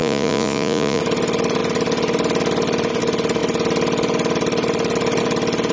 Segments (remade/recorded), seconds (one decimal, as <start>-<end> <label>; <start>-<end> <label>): 0.0-1.0 remade; 1.0-5.7 recorded